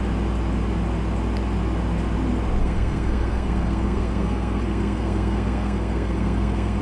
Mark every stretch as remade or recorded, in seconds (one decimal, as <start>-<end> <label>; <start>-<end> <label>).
0.0-2.6 recorded; 2.6-6.8 remade